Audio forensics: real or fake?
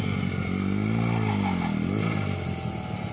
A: real